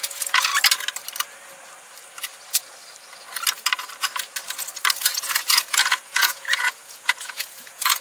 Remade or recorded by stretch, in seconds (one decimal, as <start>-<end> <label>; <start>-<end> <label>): 0.0-0.5 remade; 0.5-4.9 recorded; 4.9-8.0 remade